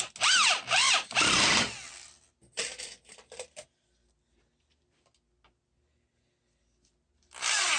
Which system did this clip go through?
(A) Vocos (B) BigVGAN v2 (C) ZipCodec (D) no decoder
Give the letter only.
D